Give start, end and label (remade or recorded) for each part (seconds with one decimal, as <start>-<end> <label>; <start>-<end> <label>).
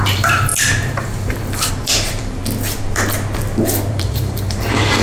0.0-2.4 remade; 2.4-3.9 recorded; 3.9-5.0 remade